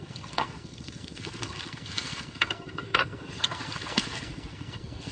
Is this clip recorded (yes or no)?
no